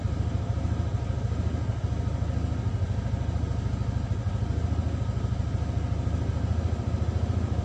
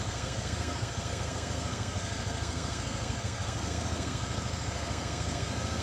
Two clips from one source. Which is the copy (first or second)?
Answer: second